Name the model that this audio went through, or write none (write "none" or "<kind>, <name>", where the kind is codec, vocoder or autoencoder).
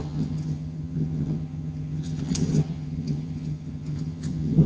vocoder, HiFi-GAN